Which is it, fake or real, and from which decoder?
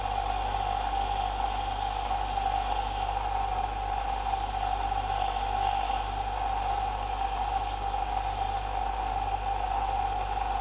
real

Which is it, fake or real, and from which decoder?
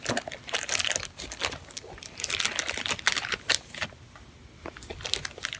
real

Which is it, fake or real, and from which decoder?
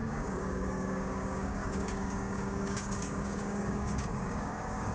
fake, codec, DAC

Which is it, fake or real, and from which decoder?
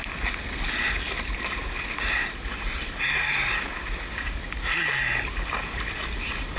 real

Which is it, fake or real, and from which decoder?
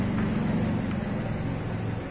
real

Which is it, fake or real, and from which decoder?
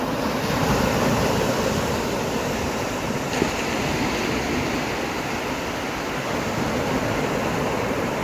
real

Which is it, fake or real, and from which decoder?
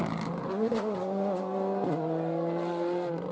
real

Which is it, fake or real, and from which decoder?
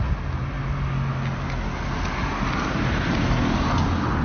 real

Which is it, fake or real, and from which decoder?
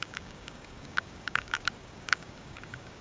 fake, codec, DAC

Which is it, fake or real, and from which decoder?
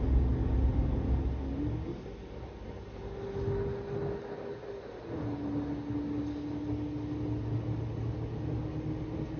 real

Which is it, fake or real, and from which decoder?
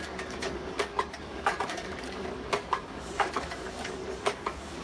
fake, codec, DAC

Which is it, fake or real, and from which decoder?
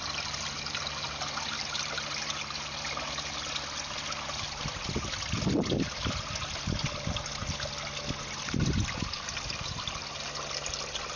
real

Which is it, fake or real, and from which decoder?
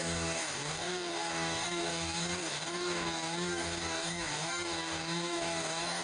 fake, codec, DAC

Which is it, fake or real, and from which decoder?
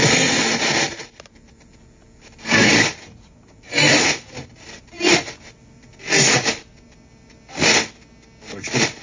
real